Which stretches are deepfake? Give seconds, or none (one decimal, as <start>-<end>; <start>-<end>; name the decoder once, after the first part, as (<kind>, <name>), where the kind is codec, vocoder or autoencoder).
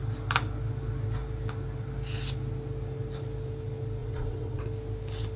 4.0-4.6 (vocoder, WaveNeXt)